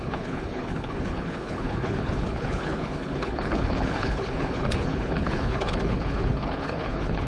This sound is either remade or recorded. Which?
remade